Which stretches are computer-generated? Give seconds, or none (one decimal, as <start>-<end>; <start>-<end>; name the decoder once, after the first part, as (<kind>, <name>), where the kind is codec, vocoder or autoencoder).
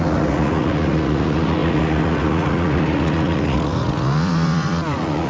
0.0-5.3 (vocoder, Vocos)